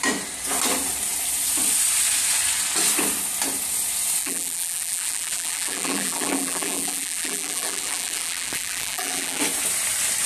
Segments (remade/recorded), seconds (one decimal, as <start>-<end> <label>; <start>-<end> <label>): 0.0-4.2 recorded; 4.2-9.4 remade; 9.4-10.3 recorded